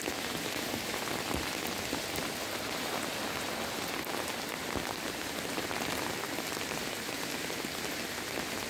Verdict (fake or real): real